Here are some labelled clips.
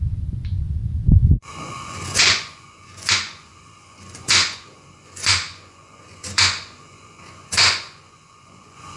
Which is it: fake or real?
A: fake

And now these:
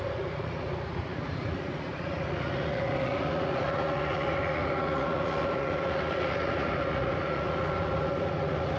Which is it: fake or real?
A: fake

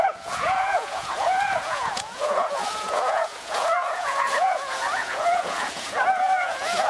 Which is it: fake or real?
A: fake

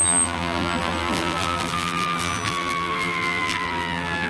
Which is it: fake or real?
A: fake